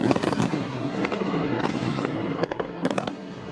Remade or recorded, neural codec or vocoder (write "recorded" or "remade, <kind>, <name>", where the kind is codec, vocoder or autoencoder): remade, codec, SNAC